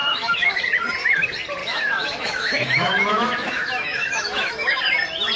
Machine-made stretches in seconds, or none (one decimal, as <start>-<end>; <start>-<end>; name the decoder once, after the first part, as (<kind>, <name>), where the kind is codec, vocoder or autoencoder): 0.0-0.6 (autoencoder, DAC-VAE); 1.6-4.8